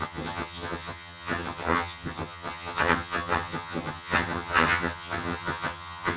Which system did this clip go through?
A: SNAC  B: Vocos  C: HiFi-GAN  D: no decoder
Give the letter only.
C